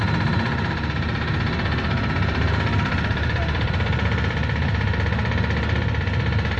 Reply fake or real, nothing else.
fake